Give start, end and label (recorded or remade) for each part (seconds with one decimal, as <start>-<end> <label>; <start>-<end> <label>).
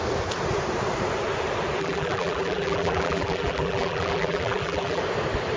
0.0-1.8 recorded; 1.8-5.0 remade; 5.0-5.6 recorded